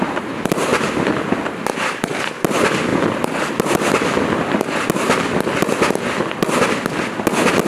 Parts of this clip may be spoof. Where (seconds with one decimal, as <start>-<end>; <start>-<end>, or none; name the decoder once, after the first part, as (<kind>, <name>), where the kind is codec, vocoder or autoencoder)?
none